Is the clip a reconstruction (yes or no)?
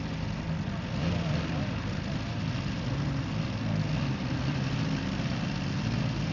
no